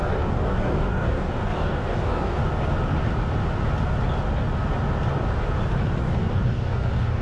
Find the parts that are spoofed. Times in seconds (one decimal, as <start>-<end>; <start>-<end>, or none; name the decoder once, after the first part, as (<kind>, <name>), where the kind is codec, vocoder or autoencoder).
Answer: 0.0-2.4 (codec, DAC); 6.0-7.2